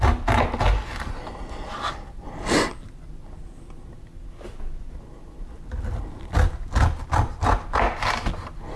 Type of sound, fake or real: real